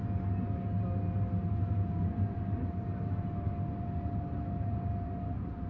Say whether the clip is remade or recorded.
recorded